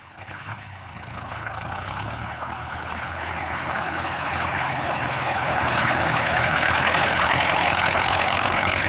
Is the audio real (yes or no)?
no